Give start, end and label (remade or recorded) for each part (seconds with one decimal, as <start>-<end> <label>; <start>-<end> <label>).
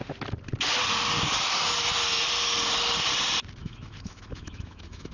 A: 0.0-3.6 recorded; 3.6-5.1 remade